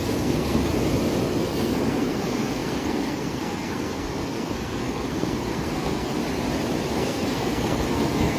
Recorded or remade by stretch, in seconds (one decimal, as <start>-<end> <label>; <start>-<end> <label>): 0.0-0.7 remade; 0.7-1.4 recorded; 1.4-6.2 remade; 6.2-6.9 recorded; 6.9-8.4 remade